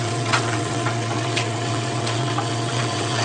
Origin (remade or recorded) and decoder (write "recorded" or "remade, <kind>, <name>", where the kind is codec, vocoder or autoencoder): remade, vocoder, WaveNeXt